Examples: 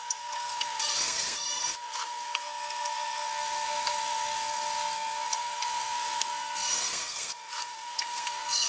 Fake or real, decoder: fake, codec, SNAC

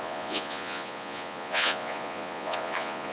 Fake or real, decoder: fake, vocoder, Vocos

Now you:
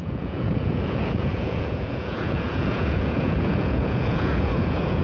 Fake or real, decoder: fake, vocoder, Vocos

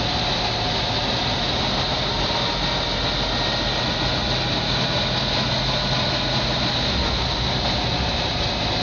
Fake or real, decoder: real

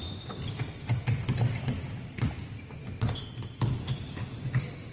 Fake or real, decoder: real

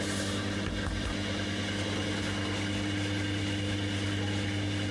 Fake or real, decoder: real